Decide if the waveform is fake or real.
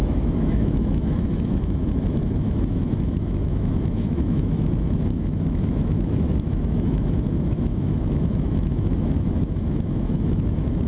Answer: fake